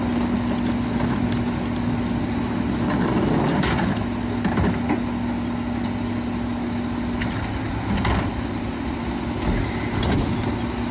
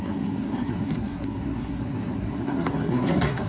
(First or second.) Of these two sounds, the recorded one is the first